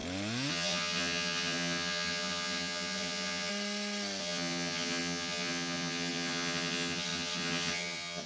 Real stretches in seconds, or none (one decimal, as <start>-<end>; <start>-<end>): 0.0-0.5; 3.5-4.2